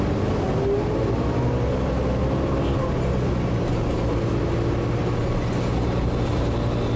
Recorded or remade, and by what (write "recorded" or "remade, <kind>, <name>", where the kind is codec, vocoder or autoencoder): recorded